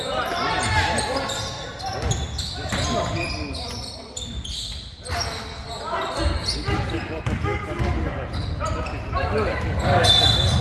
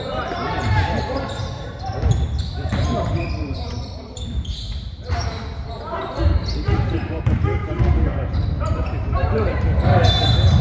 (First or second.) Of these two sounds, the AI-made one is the second